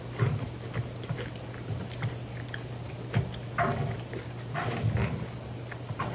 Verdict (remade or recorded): recorded